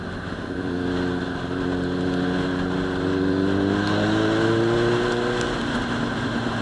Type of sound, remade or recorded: recorded